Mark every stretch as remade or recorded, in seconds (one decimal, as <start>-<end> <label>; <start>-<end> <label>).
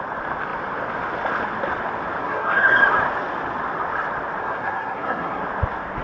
0.0-2.2 recorded; 2.2-2.8 remade; 2.8-4.4 recorded; 4.4-5.4 remade; 5.4-6.0 recorded